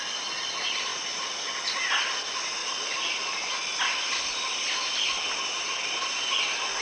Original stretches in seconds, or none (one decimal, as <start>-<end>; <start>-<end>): 0.0-0.9; 1.4-2.6; 3.5-6.8